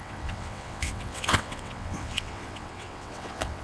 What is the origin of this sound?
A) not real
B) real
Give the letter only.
A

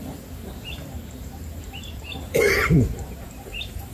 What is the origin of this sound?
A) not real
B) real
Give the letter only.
A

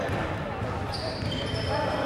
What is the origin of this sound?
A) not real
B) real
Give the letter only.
B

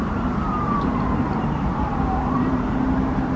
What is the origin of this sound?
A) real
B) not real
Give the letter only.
B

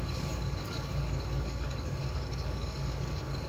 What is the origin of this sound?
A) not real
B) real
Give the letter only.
A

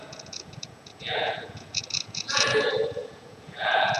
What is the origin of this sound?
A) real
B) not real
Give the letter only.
B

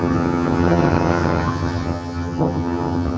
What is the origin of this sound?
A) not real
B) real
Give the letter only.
A